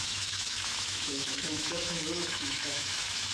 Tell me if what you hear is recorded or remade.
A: remade